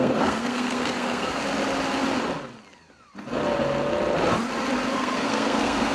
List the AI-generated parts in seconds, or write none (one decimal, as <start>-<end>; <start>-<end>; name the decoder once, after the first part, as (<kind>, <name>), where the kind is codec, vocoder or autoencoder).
0.0-1.4 (codec, SNAC); 4.9-5.9